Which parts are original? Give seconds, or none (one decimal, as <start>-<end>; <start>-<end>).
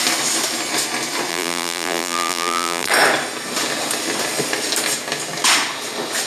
0.0-1.3; 2.9-6.3